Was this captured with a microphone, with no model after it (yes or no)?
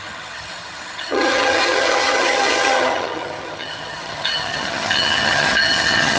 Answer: no